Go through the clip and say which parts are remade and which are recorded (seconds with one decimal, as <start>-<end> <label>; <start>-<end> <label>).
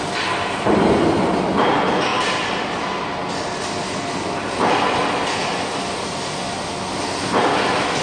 0.0-8.0 recorded